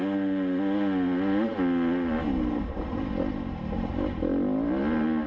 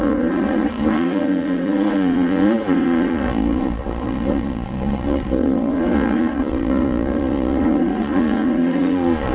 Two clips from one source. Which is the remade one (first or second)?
second